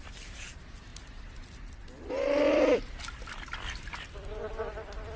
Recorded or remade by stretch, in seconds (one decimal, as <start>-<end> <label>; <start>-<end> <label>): 0.0-0.9 recorded; 0.9-3.3 remade; 3.3-5.2 recorded